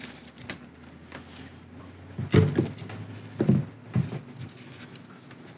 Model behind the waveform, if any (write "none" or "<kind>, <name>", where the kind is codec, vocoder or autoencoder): none